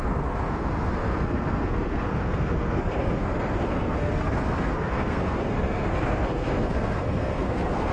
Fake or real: fake